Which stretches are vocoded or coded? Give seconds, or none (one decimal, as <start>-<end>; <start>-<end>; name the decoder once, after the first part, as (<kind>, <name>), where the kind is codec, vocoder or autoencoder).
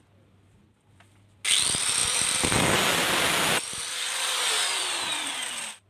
none